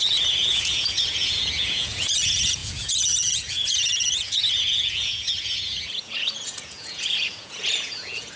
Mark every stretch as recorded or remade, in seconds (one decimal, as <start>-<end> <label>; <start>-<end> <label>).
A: 0.0-8.4 remade